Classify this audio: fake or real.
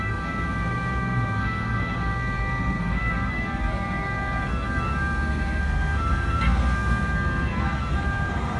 fake